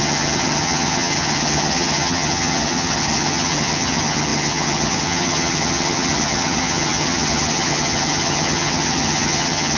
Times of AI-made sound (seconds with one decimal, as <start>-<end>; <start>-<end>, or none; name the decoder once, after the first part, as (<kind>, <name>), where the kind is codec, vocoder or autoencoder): 0.0-9.8 (vocoder, HiFi-GAN)